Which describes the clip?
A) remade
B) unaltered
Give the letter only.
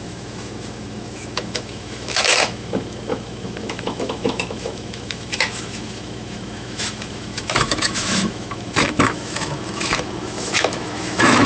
A